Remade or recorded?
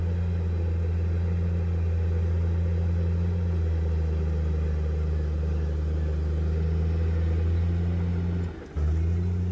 recorded